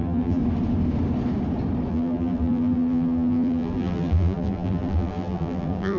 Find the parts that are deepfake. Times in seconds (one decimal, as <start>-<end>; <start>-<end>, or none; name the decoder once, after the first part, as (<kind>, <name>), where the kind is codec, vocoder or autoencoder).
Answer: 0.0-0.4 (vocoder, BigVGAN v2); 1.9-6.0